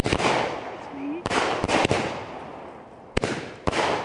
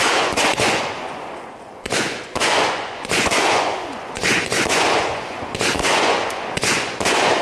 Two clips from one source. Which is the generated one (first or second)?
second